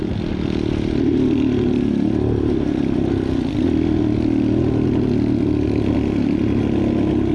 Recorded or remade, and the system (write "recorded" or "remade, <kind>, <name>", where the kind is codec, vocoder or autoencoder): recorded